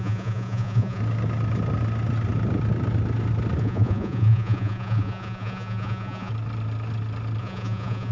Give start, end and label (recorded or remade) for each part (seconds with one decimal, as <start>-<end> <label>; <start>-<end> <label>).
0.0-1.0 remade; 1.0-3.6 recorded; 3.6-6.3 remade; 6.3-7.4 recorded; 7.4-8.1 remade